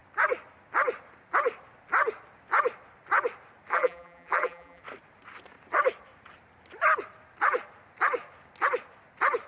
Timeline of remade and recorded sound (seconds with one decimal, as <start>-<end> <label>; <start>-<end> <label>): 0.0-3.7 recorded; 3.7-4.8 remade; 4.8-9.5 recorded